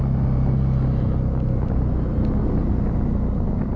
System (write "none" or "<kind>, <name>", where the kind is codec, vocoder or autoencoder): none